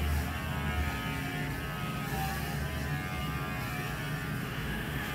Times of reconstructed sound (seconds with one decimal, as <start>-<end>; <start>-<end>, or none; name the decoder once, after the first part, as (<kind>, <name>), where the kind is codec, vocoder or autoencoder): 4.4-5.1 (autoencoder, DAC-VAE)